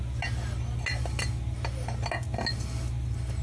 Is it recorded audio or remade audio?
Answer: recorded